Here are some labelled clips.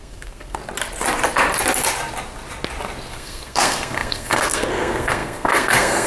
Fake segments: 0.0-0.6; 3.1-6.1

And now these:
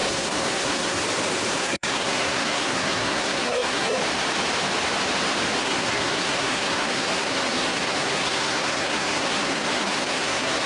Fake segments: 0.0-1.0; 1.5-4.0; 5.6-10.7

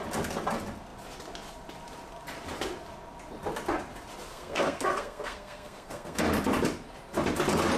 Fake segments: 4.3-6.2

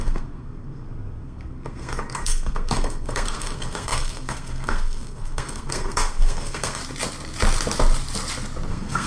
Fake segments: 0.0-6.8; 8.7-9.1